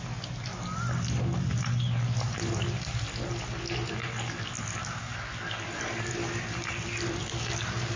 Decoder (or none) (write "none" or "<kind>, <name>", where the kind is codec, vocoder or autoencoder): none